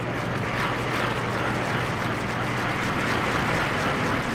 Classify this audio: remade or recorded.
recorded